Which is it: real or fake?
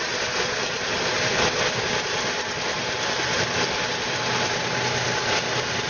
real